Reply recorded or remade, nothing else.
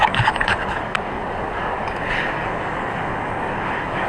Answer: remade